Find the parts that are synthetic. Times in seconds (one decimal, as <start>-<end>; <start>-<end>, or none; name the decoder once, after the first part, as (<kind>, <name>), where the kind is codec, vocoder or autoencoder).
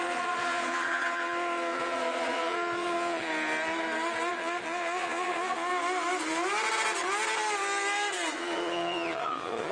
0.0-3.3 (vocoder, Vocos); 4.3-5.7; 8.3-9.7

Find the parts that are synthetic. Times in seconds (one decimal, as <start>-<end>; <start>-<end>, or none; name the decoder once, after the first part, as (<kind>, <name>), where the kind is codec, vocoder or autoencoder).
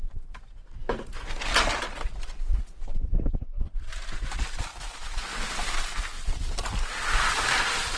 0.8-4.2 (vocoder, BigVGAN v2)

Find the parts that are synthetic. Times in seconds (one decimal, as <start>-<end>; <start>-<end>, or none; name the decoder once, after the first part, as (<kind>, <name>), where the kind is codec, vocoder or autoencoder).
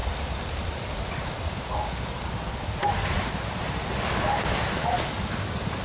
none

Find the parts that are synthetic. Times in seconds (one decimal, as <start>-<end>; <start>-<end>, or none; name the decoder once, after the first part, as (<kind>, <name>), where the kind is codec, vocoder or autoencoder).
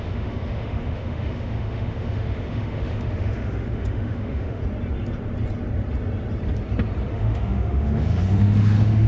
0.0-4.6 (autoencoder, DAC-VAE); 7.1-9.1